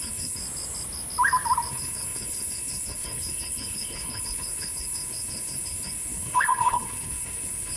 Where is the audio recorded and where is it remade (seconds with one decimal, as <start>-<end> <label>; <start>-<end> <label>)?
0.0-0.4 remade; 0.4-1.7 recorded; 1.7-7.8 remade